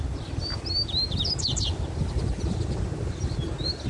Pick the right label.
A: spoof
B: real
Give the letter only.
B